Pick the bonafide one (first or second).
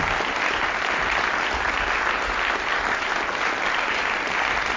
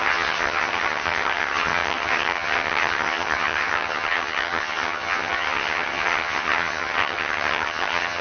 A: first